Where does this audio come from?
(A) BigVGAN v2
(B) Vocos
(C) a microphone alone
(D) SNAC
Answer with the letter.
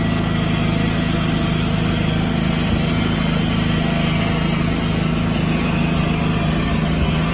C